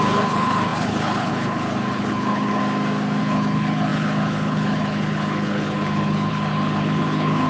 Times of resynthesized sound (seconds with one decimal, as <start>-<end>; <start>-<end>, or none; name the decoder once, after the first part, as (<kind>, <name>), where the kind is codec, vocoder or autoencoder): 0.0-2.6 (codec, HILCodec); 3.2-7.5